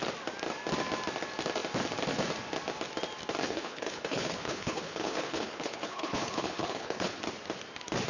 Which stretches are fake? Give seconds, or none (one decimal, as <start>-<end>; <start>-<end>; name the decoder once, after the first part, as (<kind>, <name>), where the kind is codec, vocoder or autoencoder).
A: 3.4-7.2 (codec, HILCodec)

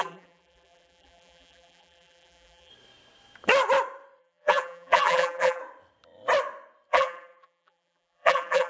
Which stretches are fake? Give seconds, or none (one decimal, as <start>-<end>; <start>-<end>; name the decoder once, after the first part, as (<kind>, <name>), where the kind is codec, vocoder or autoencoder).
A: 0.0-2.7 (vocoder, BigVGAN v2); 4.2-5.6; 6.9-8.7

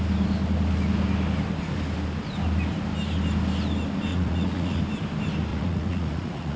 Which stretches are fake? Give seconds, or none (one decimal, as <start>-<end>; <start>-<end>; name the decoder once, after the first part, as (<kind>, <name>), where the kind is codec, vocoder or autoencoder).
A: 4.1-4.8 (vocoder, Vocos); 5.5-6.6

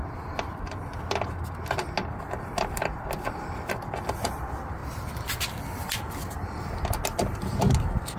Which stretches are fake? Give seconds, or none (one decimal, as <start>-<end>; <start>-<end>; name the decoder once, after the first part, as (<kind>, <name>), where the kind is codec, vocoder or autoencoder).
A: none

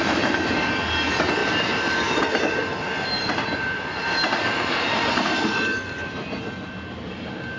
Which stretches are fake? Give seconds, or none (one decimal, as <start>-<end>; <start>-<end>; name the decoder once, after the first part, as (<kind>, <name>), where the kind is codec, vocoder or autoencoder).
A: 1.4-2.2 (vocoder, BigVGAN v2); 2.6-5.1

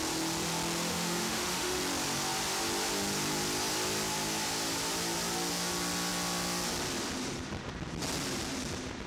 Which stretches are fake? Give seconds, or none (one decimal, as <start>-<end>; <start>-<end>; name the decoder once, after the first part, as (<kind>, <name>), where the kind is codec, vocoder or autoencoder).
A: 0.9-1.8 (autoencoder, DAC-VAE)